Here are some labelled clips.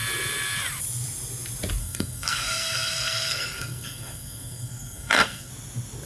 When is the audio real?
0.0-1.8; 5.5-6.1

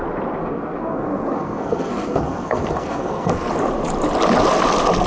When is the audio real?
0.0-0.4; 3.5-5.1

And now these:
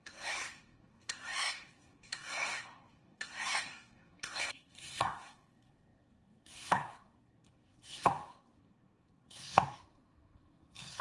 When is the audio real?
none